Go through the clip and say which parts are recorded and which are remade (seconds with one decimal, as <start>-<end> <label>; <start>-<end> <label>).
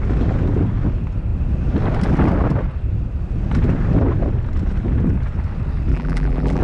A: 0.0-5.9 recorded; 5.9-6.6 remade